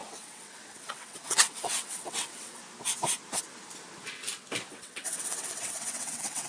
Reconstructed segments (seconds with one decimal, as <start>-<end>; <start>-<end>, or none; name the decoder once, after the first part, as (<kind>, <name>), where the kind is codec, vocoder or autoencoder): 0.0-2.6 (vocoder, WaveNeXt); 4.7-6.5